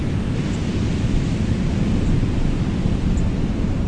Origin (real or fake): real